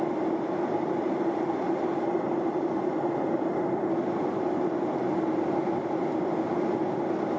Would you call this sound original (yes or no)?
yes